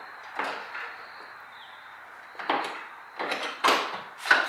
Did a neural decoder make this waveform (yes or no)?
no